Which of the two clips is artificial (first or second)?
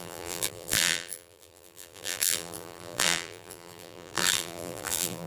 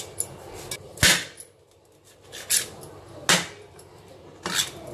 first